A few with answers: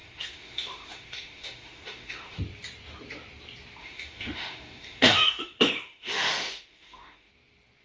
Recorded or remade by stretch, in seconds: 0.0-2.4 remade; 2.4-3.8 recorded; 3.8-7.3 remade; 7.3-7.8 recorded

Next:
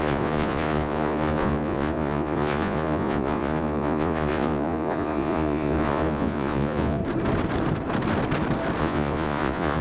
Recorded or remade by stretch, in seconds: 0.0-7.0 remade; 7.0-8.8 recorded; 8.8-9.8 remade